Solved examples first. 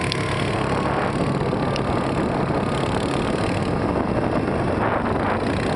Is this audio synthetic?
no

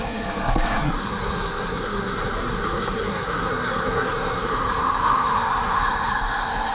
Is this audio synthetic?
yes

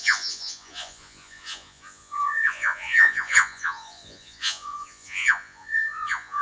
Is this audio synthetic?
yes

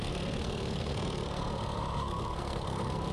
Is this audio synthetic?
yes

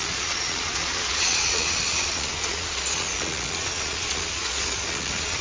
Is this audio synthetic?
yes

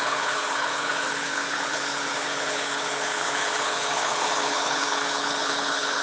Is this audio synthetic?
yes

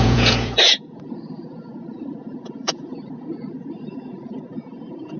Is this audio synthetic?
yes